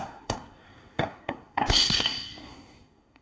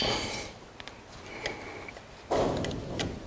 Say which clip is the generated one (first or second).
first